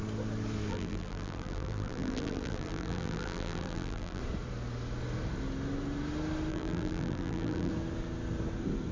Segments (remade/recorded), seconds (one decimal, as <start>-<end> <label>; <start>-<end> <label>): 0.0-0.7 recorded; 0.7-4.2 remade; 4.2-6.5 recorded; 6.5-7.7 remade; 7.7-8.9 recorded